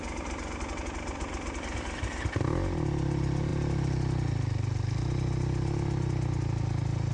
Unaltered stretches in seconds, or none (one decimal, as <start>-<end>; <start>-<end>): 0.0-7.1